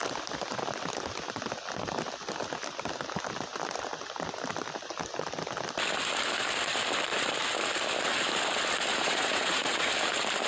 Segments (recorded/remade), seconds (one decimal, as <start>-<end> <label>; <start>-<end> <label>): 0.0-8.9 recorded; 8.9-9.9 remade; 9.9-10.5 recorded